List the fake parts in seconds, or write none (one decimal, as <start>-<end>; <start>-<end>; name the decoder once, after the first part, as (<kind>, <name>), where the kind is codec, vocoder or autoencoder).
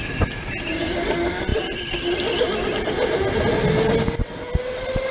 none